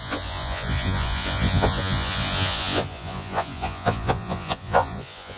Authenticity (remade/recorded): remade